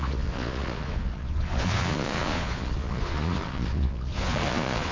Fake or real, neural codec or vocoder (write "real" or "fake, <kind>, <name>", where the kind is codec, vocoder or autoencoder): fake, vocoder, Vocos